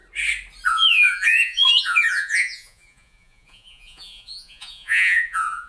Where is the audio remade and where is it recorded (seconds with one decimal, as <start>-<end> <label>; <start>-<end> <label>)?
0.0-0.7 recorded; 0.7-5.7 remade